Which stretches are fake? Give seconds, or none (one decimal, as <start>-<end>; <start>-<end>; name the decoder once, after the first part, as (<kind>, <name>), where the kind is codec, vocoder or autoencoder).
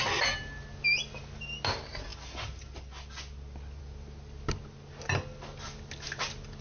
none